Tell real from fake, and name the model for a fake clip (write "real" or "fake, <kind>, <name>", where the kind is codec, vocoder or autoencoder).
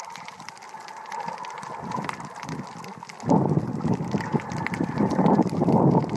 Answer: real